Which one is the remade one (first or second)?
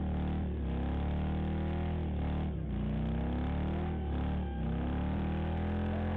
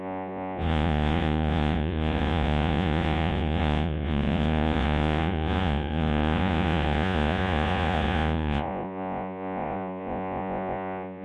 second